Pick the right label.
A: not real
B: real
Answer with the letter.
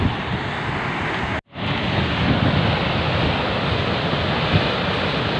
B